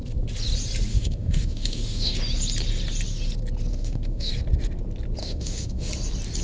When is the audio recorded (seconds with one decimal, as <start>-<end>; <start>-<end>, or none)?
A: 0.0-0.9; 2.2-3.7; 4.3-5.2; 5.9-6.4

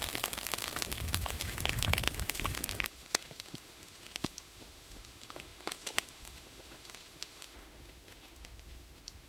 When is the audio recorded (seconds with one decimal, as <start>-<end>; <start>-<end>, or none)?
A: none

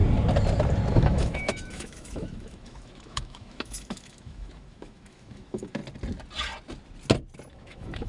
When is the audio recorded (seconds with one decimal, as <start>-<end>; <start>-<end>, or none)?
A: 0.0-0.9; 5.8-7.5